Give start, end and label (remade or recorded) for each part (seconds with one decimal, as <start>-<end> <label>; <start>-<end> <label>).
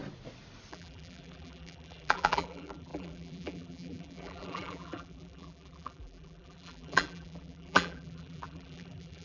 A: 0.0-0.7 recorded; 0.7-9.2 remade